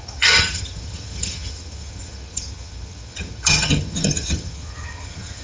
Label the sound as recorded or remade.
remade